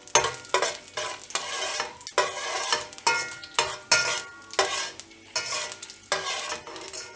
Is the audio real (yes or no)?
yes